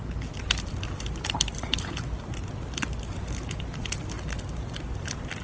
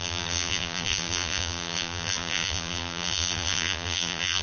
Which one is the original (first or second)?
first